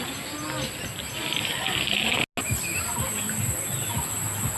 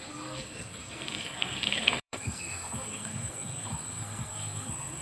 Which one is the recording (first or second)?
first